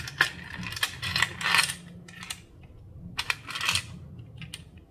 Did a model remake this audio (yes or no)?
no